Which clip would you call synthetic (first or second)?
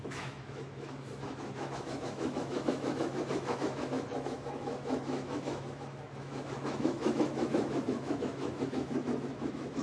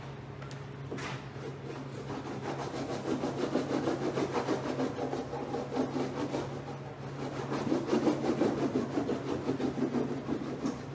first